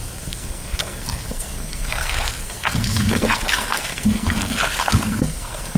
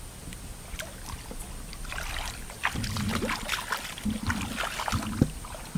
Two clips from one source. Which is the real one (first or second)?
second